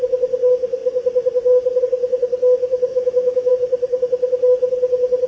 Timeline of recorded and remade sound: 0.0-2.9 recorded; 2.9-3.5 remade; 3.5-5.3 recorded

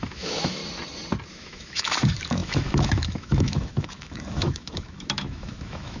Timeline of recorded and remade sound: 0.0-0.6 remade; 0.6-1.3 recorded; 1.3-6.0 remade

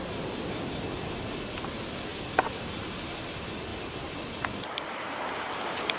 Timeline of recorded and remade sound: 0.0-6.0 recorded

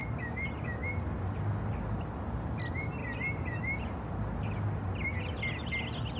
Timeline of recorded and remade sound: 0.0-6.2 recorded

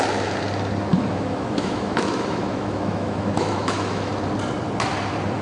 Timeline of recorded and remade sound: 0.0-0.9 recorded; 0.9-4.1 remade; 4.1-5.4 recorded

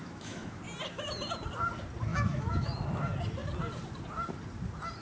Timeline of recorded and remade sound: 0.0-0.6 remade; 0.6-2.1 recorded; 2.1-2.8 remade; 2.8-5.0 recorded

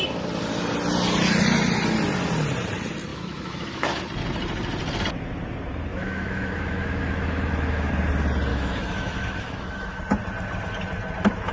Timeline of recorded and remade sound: 0.0-3.1 recorded; 3.1-4.0 remade; 4.0-5.9 recorded; 5.9-7.9 remade; 7.9-8.5 recorded; 8.5-10.0 remade; 10.0-11.5 recorded

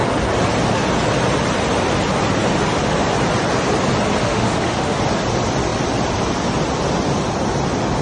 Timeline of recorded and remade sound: 0.0-4.2 recorded; 4.2-5.0 remade; 5.0-8.0 recorded